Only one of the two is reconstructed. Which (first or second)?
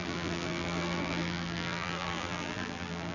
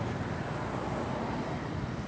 first